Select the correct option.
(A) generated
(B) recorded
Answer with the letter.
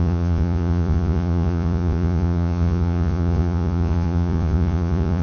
A